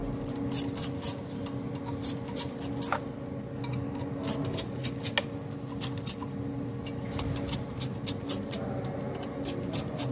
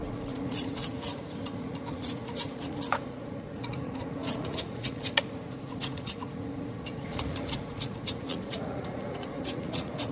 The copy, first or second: second